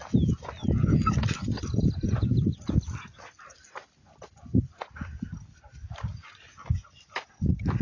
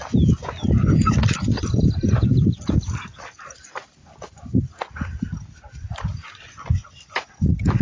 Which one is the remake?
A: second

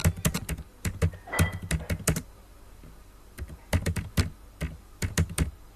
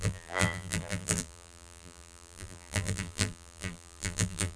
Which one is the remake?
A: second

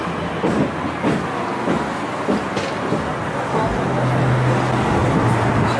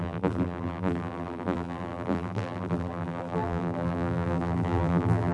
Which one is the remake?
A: second